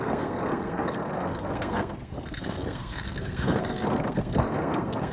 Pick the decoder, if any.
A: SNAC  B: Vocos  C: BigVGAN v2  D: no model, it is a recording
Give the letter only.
A